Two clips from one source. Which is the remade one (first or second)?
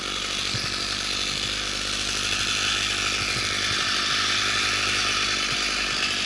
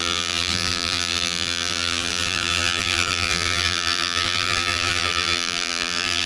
second